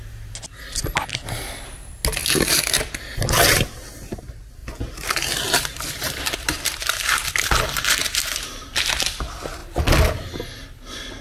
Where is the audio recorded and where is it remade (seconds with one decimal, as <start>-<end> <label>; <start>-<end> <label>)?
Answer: 0.0-4.6 recorded; 4.6-7.3 remade; 7.3-8.7 recorded; 8.7-9.2 remade; 9.2-11.2 recorded